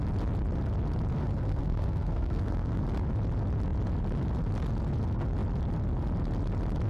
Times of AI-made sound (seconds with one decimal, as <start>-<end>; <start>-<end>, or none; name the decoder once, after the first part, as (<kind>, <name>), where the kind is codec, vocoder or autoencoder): 1.2-2.8 (codec, SNAC)